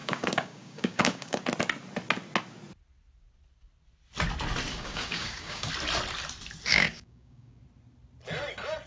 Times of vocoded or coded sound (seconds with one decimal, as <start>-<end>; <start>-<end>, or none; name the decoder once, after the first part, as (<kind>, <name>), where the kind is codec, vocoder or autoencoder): 0.0-1.4 (codec, DAC); 4.7-5.7; 6.7-7.6